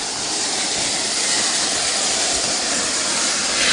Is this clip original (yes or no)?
yes